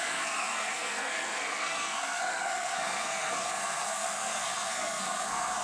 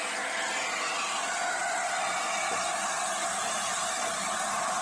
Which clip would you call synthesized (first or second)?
first